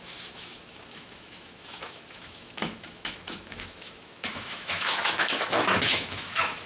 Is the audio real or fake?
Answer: fake